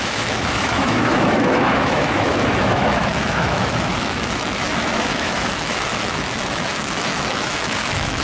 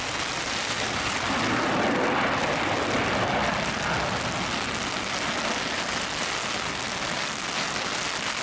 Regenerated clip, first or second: first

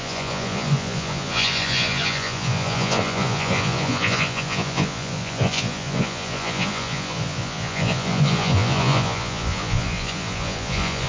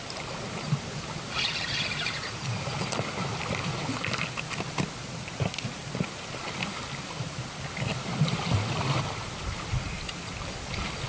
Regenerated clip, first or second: first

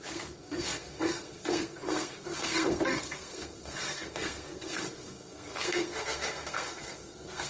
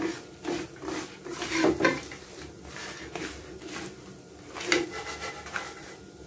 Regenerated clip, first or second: first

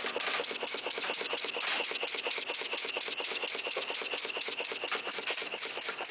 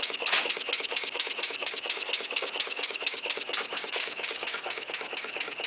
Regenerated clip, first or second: second